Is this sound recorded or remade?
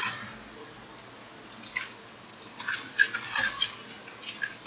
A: recorded